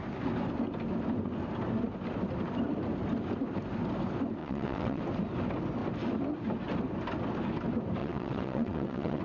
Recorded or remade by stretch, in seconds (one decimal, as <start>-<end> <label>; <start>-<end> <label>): 0.0-4.4 recorded; 4.4-5.0 remade; 5.0-8.0 recorded; 8.0-9.2 remade